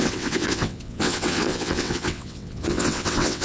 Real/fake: fake